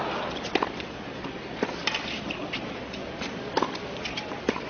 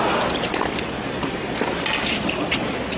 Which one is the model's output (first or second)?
first